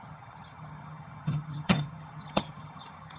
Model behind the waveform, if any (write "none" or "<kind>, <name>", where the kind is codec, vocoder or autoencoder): vocoder, HiFi-GAN